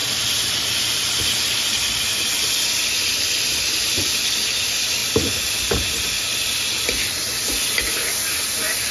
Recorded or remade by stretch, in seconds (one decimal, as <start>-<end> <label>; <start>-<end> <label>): 0.0-0.5 remade; 0.5-8.9 recorded